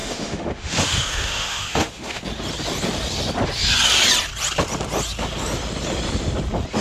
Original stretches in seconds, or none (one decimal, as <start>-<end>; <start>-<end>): 2.2-6.8